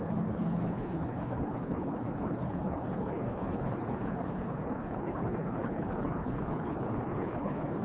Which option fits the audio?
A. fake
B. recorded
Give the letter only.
A